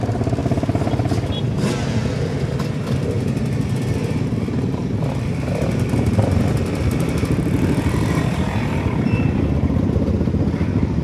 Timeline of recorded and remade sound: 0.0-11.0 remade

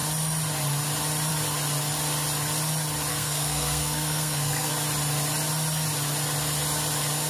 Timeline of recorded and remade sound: 0.0-3.1 recorded; 3.1-4.7 remade; 4.7-7.3 recorded

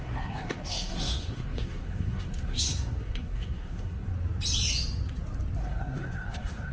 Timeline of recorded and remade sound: 0.0-4.1 remade; 4.1-5.6 recorded; 5.6-6.7 remade

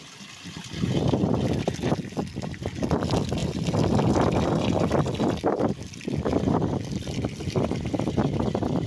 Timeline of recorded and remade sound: 0.0-8.9 recorded

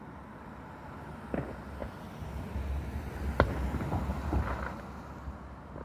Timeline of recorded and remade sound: 0.0-4.1 recorded; 4.1-4.8 remade; 4.8-5.8 recorded